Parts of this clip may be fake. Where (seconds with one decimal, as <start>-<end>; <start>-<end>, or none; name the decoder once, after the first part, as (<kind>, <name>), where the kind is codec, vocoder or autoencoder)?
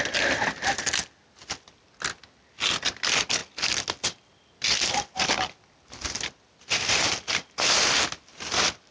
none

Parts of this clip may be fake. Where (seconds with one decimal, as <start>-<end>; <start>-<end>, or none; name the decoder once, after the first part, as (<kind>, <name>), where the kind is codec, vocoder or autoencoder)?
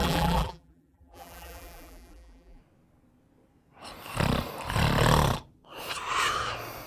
0.0-2.6 (vocoder, BigVGAN v2)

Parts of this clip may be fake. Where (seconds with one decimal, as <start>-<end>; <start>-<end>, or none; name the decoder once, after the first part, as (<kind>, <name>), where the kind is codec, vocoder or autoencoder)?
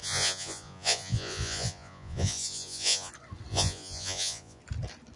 0.0-3.1 (vocoder, Vocos); 3.5-4.6